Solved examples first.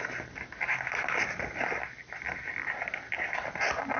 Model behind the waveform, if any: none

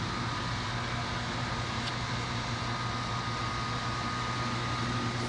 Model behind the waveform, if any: none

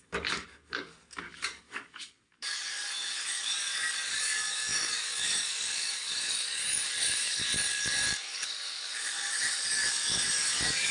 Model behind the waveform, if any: codec, DAC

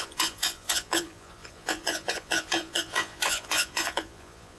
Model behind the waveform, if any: vocoder, Vocos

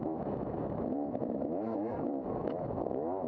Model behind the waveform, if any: autoencoder, DAC-VAE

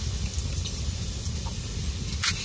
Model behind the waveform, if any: none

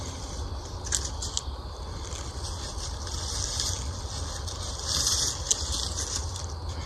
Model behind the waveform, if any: none